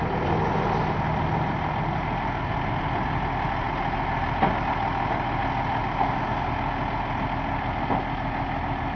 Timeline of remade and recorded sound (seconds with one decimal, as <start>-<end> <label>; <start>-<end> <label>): 0.0-9.0 recorded